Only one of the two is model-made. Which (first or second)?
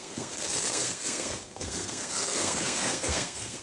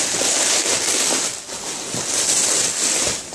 first